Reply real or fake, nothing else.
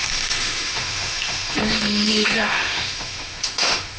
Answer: fake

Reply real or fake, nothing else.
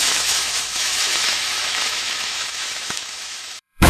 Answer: fake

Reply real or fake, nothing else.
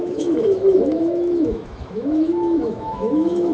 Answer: fake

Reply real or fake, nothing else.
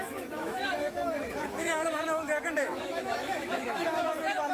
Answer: fake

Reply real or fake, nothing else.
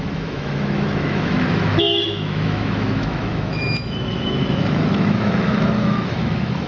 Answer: fake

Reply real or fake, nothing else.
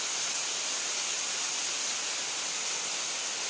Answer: real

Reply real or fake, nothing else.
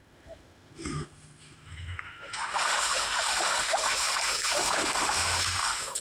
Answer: fake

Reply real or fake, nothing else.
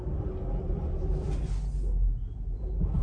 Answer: real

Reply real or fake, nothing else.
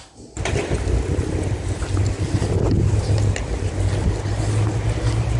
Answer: real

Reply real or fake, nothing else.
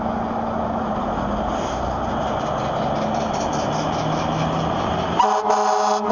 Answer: real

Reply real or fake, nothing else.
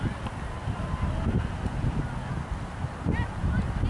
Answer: real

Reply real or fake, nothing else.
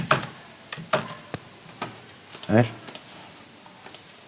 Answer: real